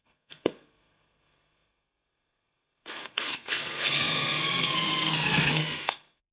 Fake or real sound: fake